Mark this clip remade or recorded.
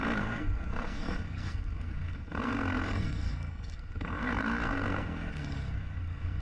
remade